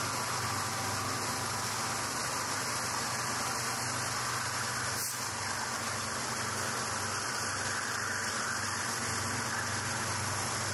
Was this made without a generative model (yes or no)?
yes